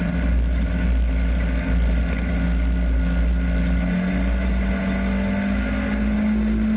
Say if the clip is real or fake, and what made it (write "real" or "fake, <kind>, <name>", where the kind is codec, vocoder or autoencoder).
real